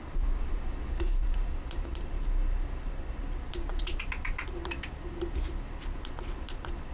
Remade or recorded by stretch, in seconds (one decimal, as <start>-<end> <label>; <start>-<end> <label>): 0.0-6.9 recorded